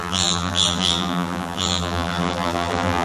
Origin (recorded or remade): remade